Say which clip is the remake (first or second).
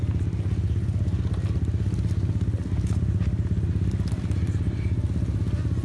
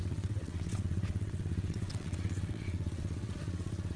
second